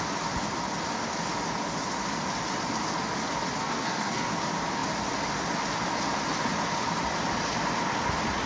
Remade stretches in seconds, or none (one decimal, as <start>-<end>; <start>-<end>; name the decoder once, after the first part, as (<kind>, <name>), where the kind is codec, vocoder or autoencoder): 3.6-4.3 (codec, SNAC)